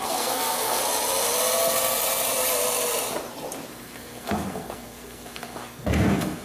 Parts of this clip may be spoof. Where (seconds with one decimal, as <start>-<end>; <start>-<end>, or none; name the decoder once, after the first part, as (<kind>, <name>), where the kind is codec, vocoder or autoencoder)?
0.0-0.8 (codec, SNAC); 3.7-6.4